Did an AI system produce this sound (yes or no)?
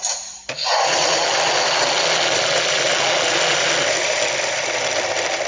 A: no